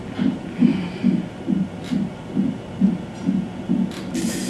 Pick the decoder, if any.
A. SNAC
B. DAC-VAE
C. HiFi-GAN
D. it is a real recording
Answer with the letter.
D